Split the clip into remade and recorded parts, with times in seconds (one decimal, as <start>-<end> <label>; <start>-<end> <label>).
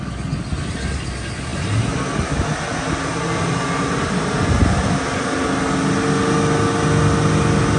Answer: 0.0-7.8 recorded